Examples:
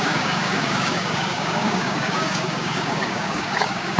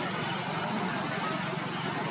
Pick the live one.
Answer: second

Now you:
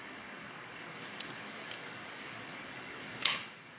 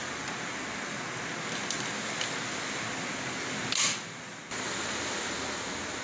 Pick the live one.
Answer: second